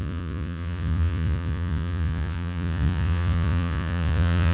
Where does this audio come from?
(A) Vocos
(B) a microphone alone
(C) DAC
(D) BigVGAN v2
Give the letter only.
A